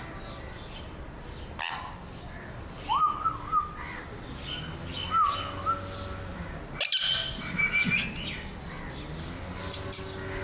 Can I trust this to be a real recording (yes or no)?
yes